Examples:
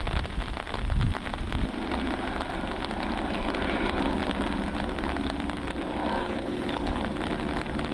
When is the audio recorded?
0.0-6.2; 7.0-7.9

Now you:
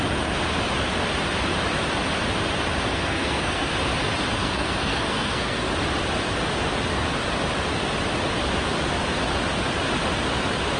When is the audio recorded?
0.0-2.9; 3.7-4.4; 5.7-10.8

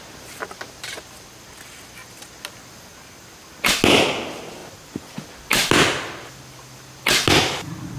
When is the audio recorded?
0.0-8.0